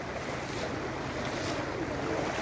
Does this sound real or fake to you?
real